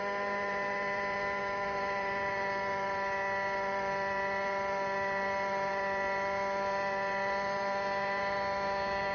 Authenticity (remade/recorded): remade